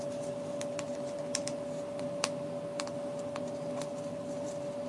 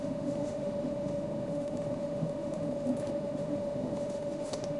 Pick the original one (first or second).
first